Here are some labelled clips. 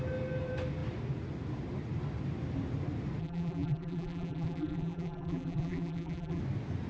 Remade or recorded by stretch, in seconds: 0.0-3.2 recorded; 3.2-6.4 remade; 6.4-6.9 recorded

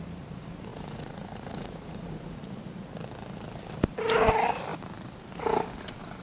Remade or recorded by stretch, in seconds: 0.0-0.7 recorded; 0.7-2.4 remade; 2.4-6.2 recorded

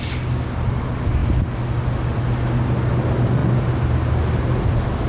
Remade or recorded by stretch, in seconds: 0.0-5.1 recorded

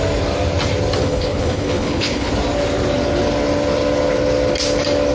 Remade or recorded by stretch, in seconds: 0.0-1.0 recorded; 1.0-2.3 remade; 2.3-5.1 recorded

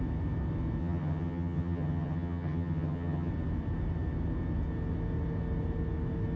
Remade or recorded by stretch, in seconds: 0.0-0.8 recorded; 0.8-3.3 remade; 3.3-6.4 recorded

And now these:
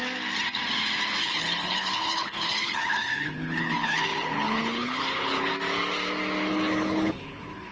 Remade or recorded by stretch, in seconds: 0.0-1.2 recorded; 1.2-5.5 remade; 5.5-6.5 recorded; 6.5-7.7 remade

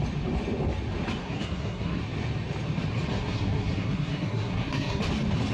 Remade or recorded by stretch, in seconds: 0.0-1.2 recorded; 1.2-2.0 remade; 2.0-3.1 recorded; 3.1-5.0 remade; 5.0-5.5 recorded